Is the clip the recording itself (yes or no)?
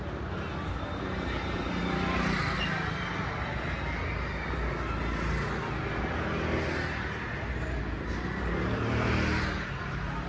yes